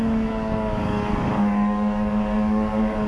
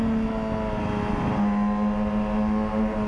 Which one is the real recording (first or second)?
second